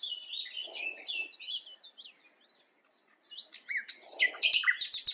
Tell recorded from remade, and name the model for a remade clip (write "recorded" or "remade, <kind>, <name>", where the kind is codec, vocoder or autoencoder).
recorded